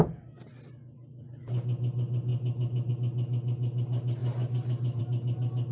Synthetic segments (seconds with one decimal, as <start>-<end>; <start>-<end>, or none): none